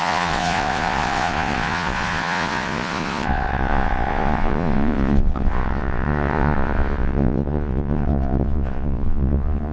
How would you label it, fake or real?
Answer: fake